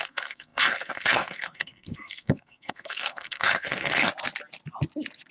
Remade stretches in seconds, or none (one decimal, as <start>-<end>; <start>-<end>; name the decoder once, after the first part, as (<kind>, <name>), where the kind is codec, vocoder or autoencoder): 0.0-4.1 (codec, SNAC)